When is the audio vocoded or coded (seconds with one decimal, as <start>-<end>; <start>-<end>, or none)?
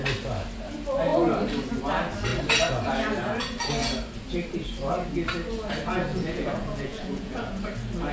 6.1-7.6